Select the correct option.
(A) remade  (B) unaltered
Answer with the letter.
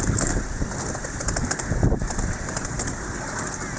B